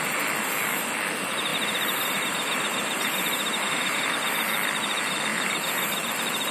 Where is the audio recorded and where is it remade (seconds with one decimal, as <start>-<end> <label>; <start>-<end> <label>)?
0.0-1.5 recorded; 1.5-4.1 remade; 4.1-5.3 recorded; 5.3-6.0 remade; 6.0-6.5 recorded